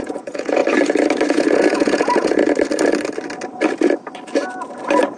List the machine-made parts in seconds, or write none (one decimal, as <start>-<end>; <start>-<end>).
0.0-0.6; 1.3-2.4